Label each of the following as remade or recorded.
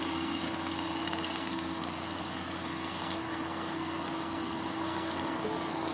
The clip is remade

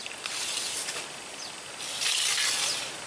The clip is recorded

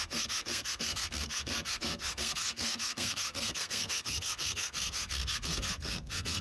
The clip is remade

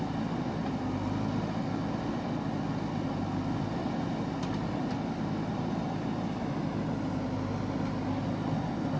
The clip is recorded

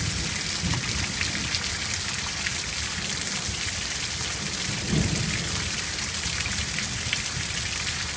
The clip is recorded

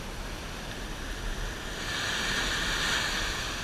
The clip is recorded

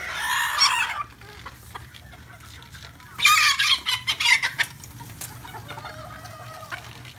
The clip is recorded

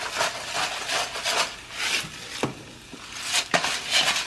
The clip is recorded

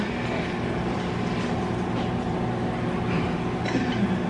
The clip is recorded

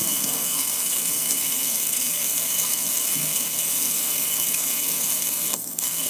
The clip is remade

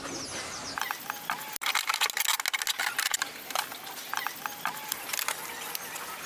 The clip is recorded